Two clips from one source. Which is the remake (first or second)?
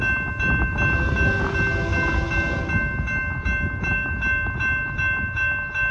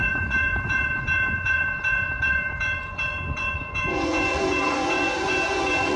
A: second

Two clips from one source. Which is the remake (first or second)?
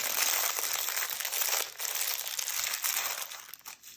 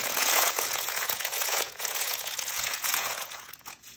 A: second